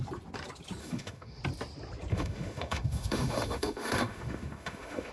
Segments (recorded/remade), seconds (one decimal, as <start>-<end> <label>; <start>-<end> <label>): 0.0-0.8 recorded; 0.8-1.4 remade; 1.4-2.1 recorded; 2.1-5.1 remade